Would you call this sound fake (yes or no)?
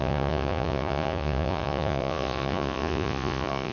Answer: yes